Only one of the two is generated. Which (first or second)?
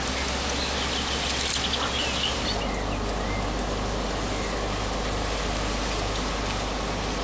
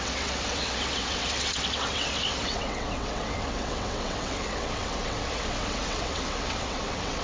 second